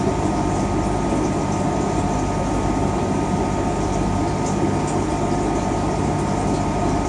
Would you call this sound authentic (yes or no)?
yes